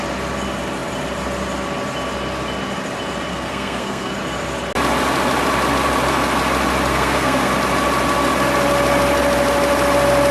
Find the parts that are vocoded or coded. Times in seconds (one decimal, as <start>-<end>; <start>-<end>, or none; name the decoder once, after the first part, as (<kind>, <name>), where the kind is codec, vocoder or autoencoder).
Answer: 3.3-4.1 (codec, SNAC); 6.9-7.5